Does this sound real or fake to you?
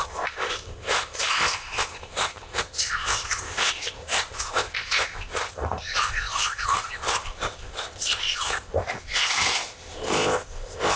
fake